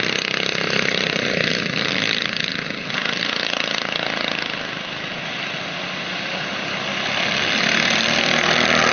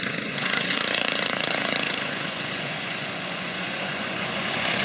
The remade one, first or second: second